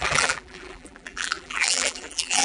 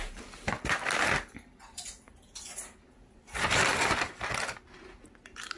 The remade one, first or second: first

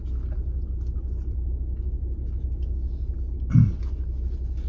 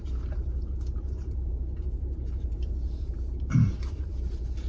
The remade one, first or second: second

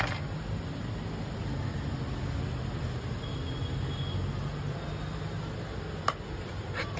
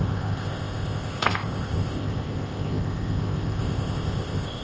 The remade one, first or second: second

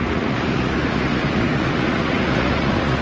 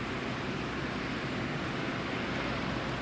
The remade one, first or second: first